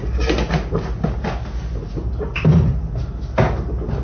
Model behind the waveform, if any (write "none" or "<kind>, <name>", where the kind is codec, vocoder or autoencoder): none